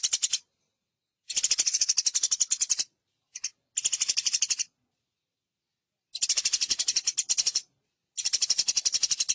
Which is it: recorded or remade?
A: recorded